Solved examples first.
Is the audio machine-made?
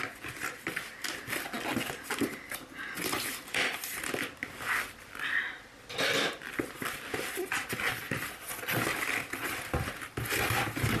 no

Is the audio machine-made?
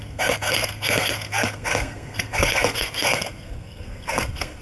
yes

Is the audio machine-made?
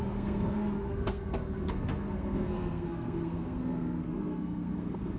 yes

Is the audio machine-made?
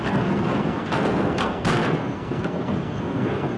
yes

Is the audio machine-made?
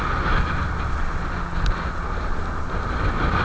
no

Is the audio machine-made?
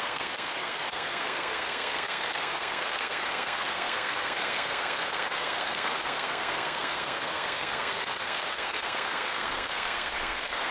yes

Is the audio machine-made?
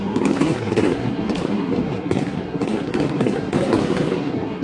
yes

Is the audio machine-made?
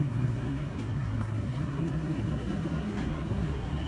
yes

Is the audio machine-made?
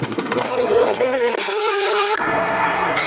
yes